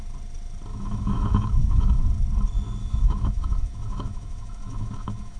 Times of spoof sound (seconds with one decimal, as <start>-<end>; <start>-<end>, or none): 0.7-2.0; 2.8-5.4